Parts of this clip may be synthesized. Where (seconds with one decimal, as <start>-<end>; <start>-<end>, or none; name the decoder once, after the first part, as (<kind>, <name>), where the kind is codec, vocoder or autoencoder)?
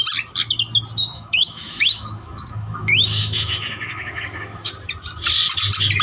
1.1-4.7 (autoencoder, DAC-VAE)